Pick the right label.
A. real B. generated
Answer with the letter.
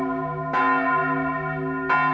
A